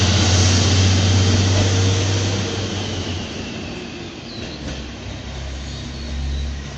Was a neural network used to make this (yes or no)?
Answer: no